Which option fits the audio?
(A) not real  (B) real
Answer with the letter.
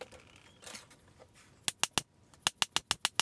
B